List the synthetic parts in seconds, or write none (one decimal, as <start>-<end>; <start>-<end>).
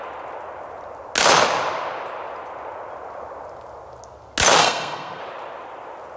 4.6-5.2